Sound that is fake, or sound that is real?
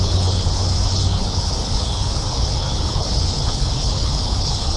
fake